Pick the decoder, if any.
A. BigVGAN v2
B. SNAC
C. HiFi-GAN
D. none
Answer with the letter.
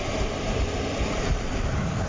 A